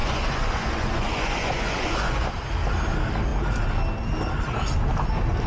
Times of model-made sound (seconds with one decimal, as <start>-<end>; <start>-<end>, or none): 0.0-2.3